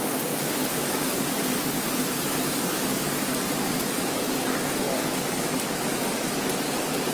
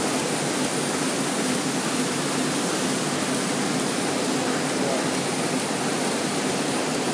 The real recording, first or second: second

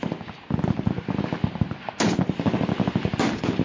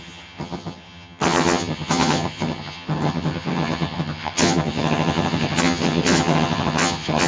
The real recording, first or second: first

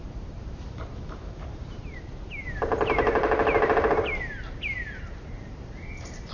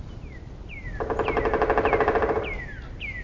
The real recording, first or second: second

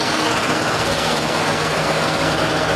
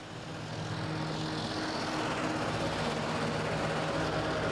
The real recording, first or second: second